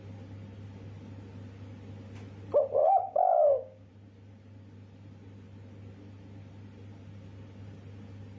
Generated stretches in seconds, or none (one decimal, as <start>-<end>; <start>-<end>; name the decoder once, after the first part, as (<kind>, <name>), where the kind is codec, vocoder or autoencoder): 2.8-3.9 (codec, DAC)